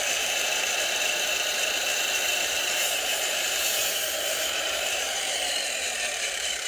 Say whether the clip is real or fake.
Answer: fake